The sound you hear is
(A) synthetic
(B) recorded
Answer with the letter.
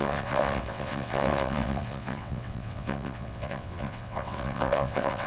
A